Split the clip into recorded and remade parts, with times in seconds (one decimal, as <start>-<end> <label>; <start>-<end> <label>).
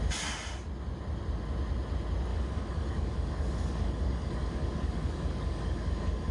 0.0-2.3 recorded; 2.3-6.3 remade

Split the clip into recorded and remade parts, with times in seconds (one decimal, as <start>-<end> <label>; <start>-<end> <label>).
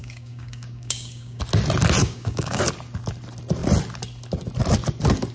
0.0-1.4 remade; 1.4-2.0 recorded; 2.0-2.6 remade; 2.6-5.3 recorded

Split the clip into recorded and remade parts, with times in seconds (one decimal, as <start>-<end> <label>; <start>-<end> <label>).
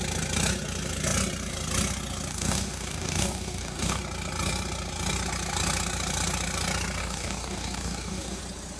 0.0-2.3 recorded; 2.3-4.0 remade; 4.0-7.0 recorded; 7.0-8.4 remade; 8.4-8.8 recorded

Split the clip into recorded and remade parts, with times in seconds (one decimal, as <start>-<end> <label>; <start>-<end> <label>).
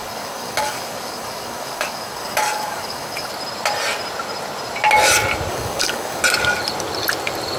0.0-3.3 remade; 3.3-5.5 recorded; 5.5-6.2 remade; 6.2-7.6 recorded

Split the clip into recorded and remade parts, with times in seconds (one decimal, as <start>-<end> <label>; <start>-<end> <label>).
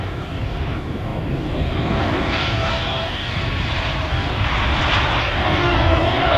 0.0-3.4 remade; 3.4-4.1 recorded; 4.1-4.5 remade; 4.5-5.2 recorded; 5.2-6.4 remade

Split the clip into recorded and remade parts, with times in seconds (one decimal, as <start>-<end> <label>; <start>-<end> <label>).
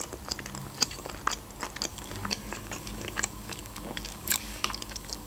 0.0-0.6 recorded; 0.6-1.1 remade; 1.1-1.9 recorded; 1.9-5.3 remade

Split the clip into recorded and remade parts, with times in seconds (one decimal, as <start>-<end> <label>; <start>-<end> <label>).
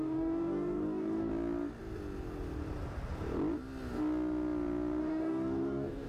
0.0-1.3 remade; 1.3-5.0 recorded; 5.0-6.1 remade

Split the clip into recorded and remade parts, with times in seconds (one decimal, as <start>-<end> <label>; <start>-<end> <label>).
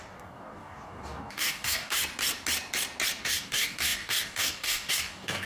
0.0-2.0 remade; 2.0-3.2 recorded; 3.2-5.5 remade